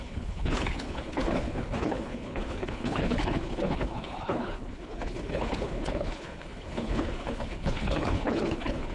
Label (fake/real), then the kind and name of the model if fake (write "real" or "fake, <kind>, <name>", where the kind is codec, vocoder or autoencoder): fake, codec, HILCodec